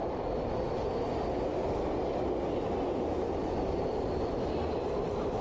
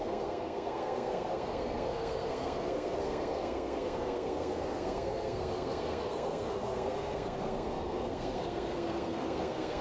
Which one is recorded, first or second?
first